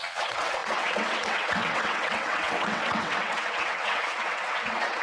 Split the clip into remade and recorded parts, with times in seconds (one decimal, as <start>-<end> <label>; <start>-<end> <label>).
0.0-5.0 remade